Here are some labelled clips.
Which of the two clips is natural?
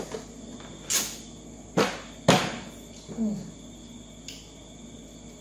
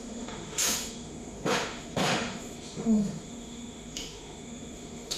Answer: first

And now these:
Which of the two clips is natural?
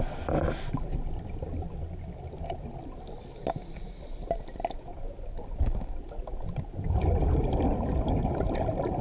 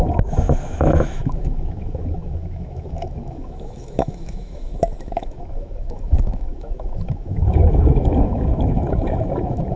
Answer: first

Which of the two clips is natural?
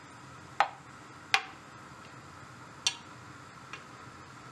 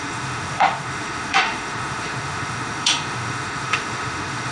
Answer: first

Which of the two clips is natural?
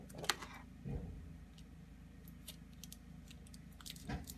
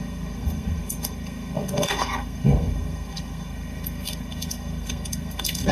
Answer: first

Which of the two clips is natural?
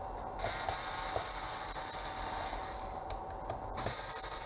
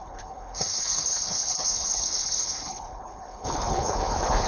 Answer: first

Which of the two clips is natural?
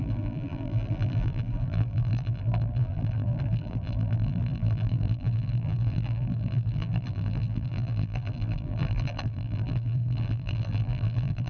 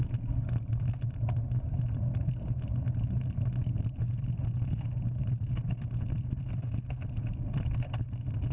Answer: second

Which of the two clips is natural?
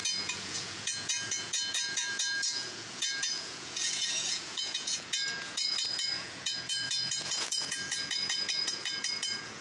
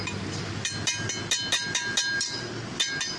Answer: second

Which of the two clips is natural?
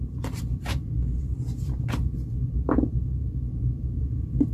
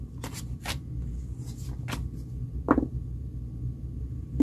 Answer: second